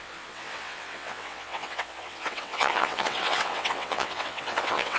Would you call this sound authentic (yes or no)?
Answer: no